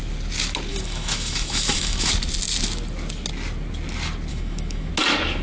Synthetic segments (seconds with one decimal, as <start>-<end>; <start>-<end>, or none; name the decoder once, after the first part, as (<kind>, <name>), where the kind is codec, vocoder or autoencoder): 0.7-2.1 (autoencoder, DAC-VAE); 4.3-4.9